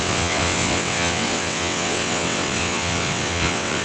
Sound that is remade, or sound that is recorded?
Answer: remade